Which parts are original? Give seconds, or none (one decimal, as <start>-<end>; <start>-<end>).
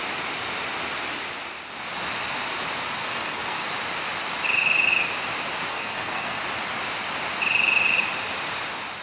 0.0-3.0; 3.7-5.7; 6.4-9.0